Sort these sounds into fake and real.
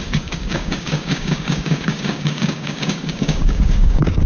fake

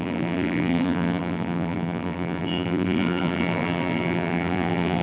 fake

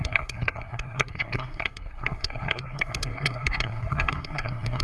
fake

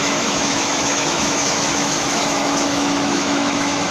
fake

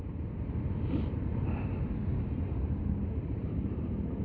real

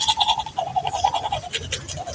real